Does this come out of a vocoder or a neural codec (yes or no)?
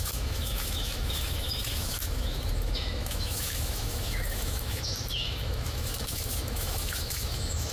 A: yes